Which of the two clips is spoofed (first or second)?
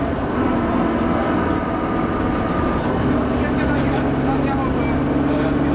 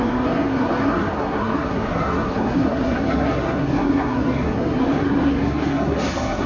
second